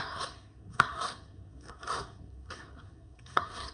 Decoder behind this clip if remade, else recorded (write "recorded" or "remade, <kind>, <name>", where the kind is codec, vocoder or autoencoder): remade, codec, SNAC